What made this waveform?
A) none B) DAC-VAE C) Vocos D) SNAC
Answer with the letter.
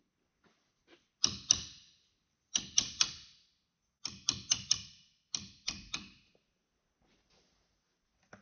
A